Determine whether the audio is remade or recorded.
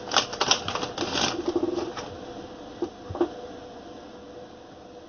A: recorded